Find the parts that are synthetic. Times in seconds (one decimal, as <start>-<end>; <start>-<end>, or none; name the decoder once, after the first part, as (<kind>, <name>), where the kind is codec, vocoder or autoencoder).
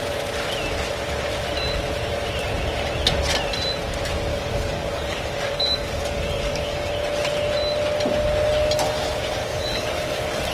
4.3-6.9 (codec, DAC); 9.4-10.5